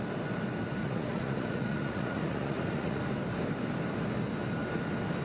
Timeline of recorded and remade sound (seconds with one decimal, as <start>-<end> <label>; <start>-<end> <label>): 0.0-0.8 recorded; 0.8-3.0 remade; 3.0-5.2 recorded